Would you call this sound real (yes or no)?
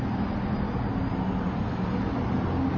yes